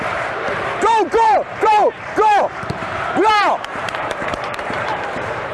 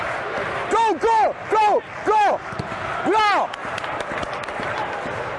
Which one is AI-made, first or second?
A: first